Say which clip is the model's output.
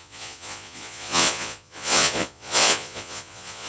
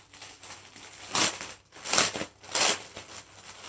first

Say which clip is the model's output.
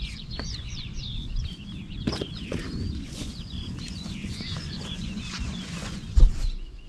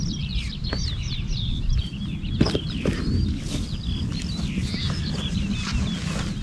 first